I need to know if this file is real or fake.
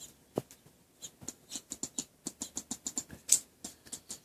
real